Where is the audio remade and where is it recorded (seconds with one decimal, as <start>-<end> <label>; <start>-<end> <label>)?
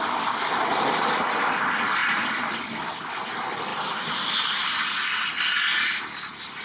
0.0-6.6 recorded